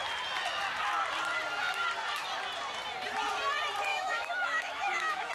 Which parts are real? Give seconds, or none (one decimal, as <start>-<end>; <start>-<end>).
0.0-3.9